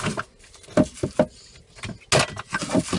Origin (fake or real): real